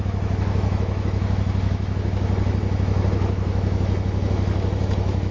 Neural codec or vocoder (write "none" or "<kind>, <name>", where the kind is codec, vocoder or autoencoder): autoencoder, DAC-VAE